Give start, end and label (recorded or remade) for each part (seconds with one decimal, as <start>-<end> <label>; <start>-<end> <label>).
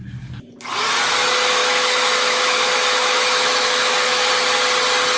0.0-1.6 recorded; 1.6-4.3 remade; 4.3-5.2 recorded